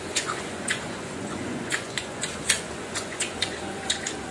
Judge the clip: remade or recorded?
remade